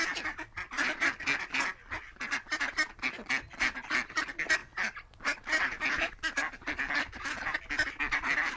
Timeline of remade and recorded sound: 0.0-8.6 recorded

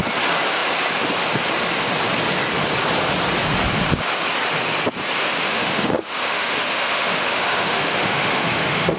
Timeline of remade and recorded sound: 0.0-5.5 recorded; 5.5-9.0 remade

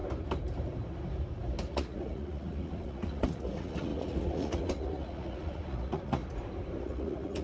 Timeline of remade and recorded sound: 0.0-1.7 recorded; 1.7-6.2 remade; 6.2-6.8 recorded; 6.8-7.4 remade

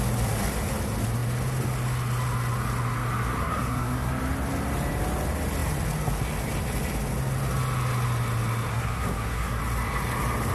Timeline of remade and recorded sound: 0.0-3.4 recorded; 3.4-4.1 remade; 4.1-8.7 recorded; 8.7-9.6 remade; 9.6-10.5 recorded

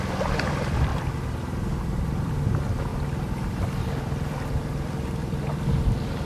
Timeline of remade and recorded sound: 0.0-0.9 remade; 0.9-1.8 recorded; 1.8-6.3 remade

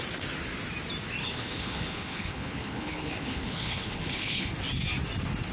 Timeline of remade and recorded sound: 0.0-1.2 recorded; 1.2-4.5 remade; 4.5-5.5 recorded

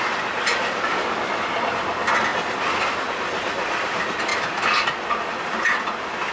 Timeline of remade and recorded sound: 0.0-6.3 recorded

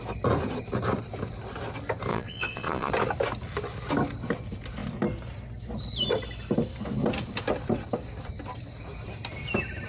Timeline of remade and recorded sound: 0.0-2.1 recorded; 2.1-2.9 remade; 2.9-9.9 recorded